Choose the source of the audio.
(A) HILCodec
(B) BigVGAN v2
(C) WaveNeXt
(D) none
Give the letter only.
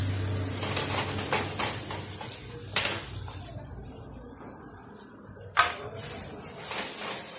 D